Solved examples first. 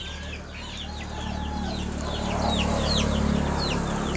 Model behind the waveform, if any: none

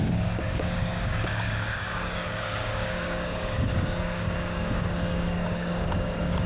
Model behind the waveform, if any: codec, DAC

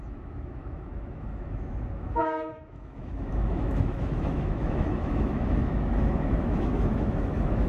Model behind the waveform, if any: autoencoder, DAC-VAE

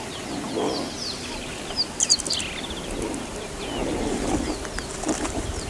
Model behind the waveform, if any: none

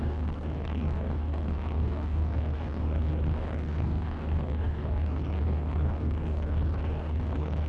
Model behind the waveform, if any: codec, DAC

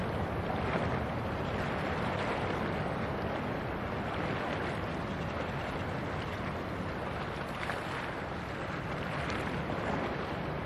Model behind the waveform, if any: none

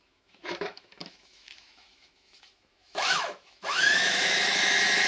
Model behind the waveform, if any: autoencoder, DAC-VAE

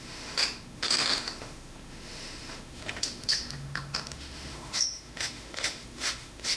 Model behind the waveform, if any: autoencoder, DAC-VAE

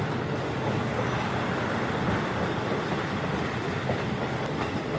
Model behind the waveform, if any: none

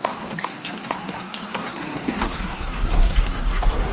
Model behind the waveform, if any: codec, SNAC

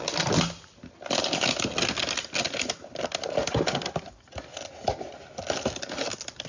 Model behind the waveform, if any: none